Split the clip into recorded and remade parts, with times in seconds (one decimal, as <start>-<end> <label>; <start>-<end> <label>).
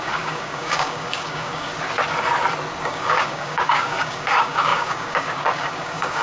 0.0-1.7 remade; 1.7-2.8 recorded; 2.8-6.2 remade